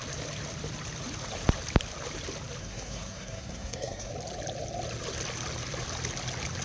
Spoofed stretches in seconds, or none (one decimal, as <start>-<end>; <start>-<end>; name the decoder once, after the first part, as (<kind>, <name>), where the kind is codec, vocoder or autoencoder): 2.6-4.1 (codec, SNAC)